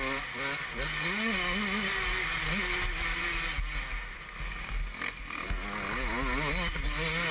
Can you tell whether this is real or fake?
real